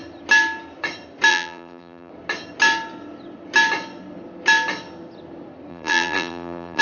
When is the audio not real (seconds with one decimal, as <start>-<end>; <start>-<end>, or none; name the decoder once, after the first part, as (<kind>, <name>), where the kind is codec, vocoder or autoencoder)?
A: 1.3-2.1 (vocoder, BigVGAN v2); 5.7-6.8